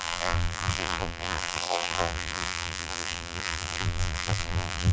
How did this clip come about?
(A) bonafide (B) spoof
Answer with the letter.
B